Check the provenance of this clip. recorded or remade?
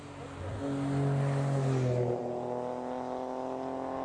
recorded